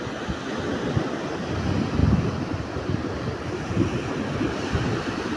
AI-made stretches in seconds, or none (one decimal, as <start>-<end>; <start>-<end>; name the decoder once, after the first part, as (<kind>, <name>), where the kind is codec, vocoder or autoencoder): 2.0-5.4 (vocoder, BigVGAN v2)